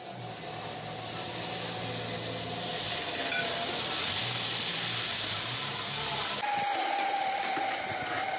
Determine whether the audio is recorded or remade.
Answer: recorded